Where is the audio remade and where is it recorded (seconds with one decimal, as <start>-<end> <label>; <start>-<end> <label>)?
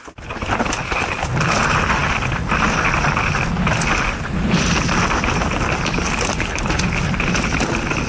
0.0-8.1 recorded